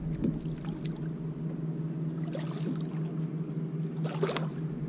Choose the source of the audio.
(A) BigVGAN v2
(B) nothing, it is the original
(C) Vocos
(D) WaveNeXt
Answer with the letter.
B